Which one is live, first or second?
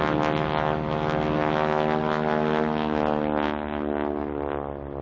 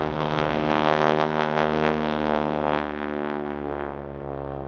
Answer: first